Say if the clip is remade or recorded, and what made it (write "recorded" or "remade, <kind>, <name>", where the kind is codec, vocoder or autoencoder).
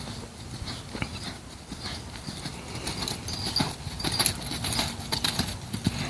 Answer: recorded